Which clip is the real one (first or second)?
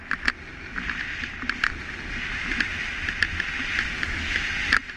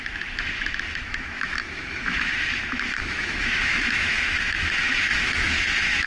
first